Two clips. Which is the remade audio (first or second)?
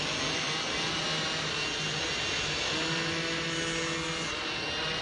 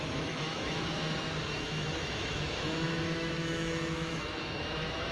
second